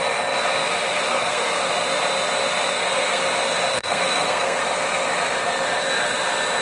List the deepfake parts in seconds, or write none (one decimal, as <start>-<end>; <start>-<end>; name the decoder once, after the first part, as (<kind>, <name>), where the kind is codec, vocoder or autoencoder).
1.1-1.7 (codec, SNAC); 2.7-3.2; 3.7-4.6